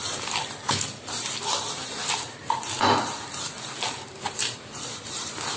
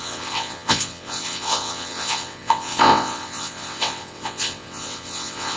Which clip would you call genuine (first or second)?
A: first